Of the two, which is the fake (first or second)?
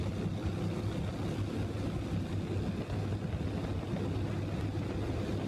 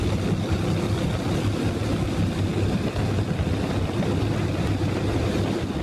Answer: second